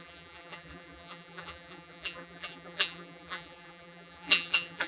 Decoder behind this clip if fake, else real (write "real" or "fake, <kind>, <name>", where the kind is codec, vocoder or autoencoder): fake, vocoder, BigVGAN v2